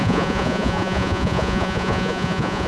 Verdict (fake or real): fake